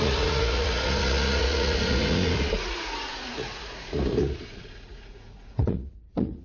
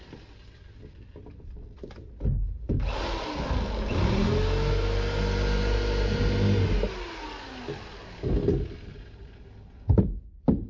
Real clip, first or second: second